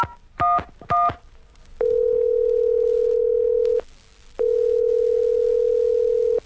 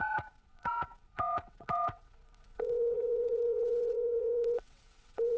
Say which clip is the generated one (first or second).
second